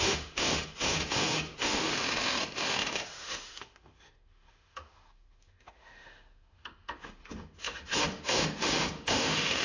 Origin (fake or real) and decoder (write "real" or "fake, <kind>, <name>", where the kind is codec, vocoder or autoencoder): fake, autoencoder, DAC-VAE